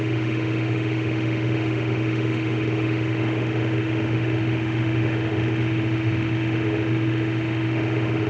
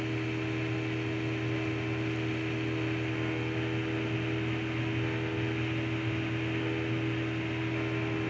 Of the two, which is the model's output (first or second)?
first